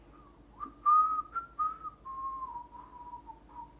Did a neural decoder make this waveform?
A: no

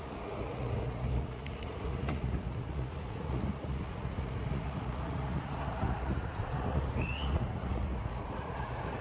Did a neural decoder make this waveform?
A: yes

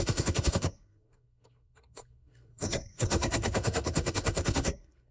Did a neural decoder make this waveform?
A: yes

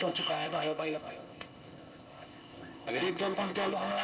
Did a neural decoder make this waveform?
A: yes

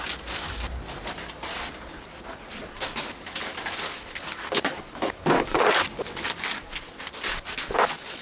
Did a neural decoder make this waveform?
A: no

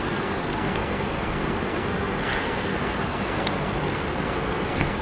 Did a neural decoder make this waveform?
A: yes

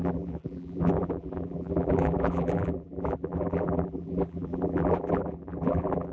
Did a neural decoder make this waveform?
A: yes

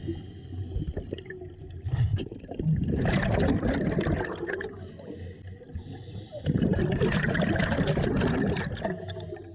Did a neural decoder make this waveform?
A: no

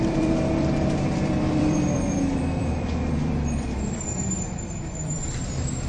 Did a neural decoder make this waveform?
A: yes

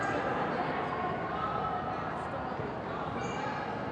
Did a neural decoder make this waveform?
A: no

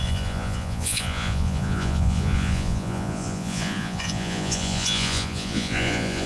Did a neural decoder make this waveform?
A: yes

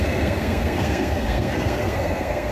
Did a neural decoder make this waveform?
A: yes